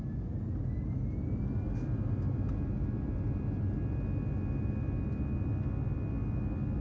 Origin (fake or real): real